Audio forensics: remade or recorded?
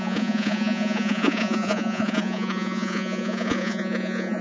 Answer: remade